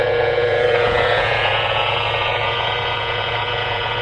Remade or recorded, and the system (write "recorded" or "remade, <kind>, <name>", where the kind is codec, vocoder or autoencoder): remade, vocoder, Vocos